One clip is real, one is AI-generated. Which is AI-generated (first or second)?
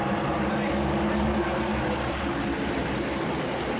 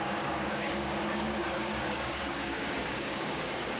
second